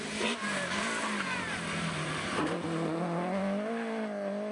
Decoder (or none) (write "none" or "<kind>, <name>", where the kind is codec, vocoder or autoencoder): none